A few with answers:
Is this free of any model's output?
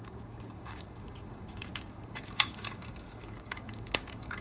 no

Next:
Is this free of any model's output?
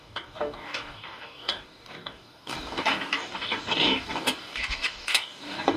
no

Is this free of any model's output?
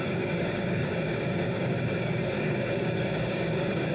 no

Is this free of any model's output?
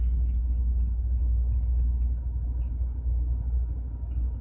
yes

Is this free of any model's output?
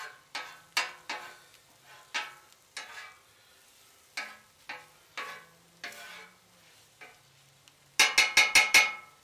yes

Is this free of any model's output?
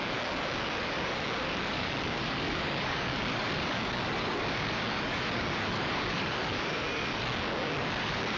no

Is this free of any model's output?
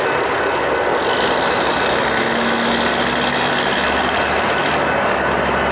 yes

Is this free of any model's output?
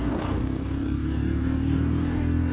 no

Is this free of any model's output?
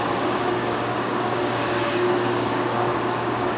no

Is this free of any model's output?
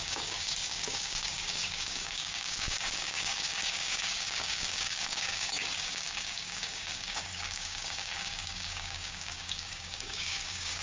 no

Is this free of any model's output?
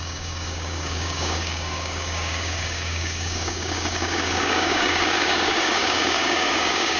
no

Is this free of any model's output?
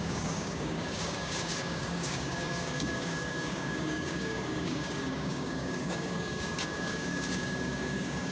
no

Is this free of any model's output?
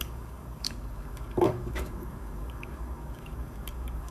no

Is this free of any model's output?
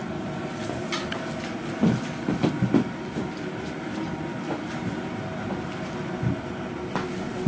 yes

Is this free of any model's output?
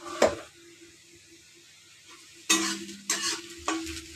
yes